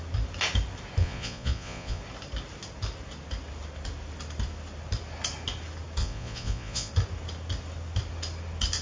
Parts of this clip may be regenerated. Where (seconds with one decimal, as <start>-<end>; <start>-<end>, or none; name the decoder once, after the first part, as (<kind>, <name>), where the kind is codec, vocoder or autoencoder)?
1.0-2.0 (vocoder, Vocos); 6.0-6.9